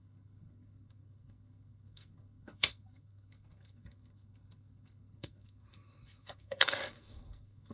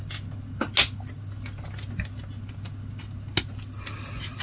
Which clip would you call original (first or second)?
second